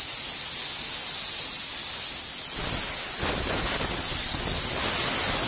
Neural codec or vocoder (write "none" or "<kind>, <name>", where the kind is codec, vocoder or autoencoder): none